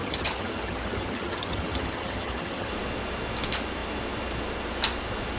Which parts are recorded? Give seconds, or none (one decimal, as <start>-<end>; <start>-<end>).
2.7-5.4